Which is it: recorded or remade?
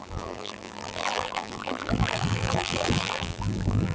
remade